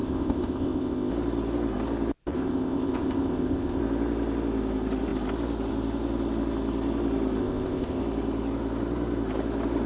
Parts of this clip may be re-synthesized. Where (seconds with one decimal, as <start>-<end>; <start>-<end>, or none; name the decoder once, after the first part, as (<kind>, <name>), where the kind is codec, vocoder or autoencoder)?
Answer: 0.0-1.1 (codec, ZipCodec); 2.3-3.8; 7.4-8.0